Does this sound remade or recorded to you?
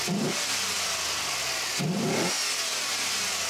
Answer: recorded